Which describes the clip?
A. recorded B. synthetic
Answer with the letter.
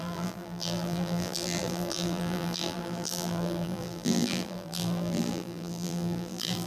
B